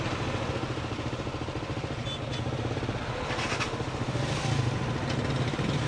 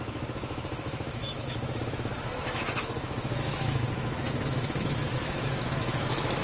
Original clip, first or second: first